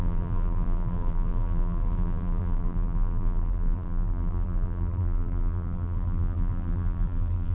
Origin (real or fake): fake